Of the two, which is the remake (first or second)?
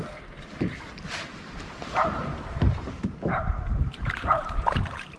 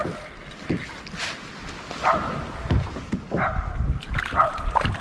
first